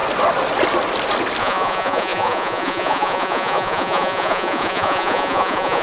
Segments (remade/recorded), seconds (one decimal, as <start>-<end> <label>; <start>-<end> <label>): 0.0-1.4 recorded; 1.4-5.8 remade